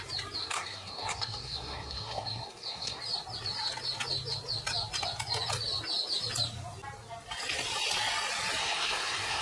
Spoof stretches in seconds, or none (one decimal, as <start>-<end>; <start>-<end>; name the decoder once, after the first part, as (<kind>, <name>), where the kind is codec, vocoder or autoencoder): 0.4-3.0 (codec, SNAC); 8.6-9.4